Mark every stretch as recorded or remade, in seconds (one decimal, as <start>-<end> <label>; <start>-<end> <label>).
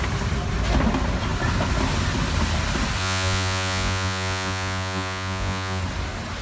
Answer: 0.0-3.0 recorded; 3.0-5.8 remade; 5.8-6.4 recorded